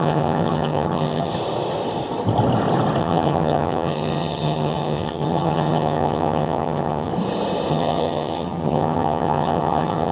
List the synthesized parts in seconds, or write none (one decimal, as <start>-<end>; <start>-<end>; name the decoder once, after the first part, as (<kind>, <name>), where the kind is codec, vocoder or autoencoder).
0.0-1.3 (vocoder, HiFi-GAN); 3.0-7.1; 7.7-10.1